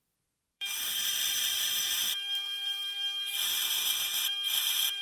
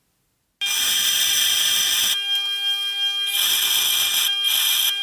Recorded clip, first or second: second